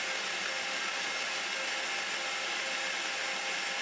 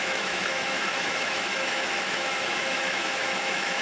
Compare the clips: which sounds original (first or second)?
first